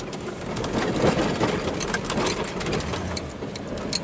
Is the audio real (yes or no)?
yes